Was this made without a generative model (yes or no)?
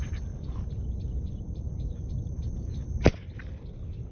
yes